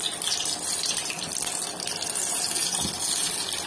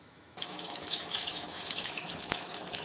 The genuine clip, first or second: first